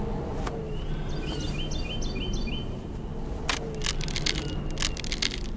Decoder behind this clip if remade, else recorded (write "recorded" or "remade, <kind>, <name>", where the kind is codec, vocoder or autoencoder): recorded